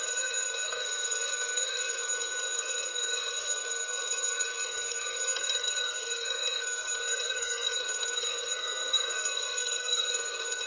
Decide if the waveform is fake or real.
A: fake